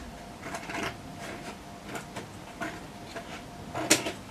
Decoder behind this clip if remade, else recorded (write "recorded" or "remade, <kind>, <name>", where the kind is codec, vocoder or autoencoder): recorded